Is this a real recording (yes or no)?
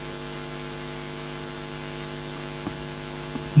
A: yes